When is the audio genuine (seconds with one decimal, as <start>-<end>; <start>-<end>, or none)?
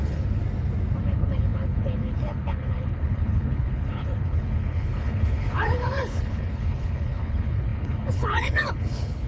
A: 0.4-1.0